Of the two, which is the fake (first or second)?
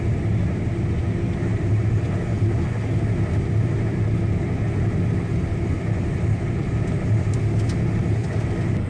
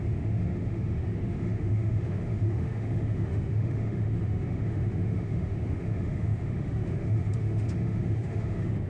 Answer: second